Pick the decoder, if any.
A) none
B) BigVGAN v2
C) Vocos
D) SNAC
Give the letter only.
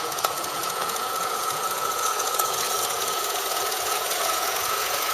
C